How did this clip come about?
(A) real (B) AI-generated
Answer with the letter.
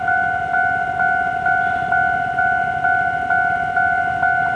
A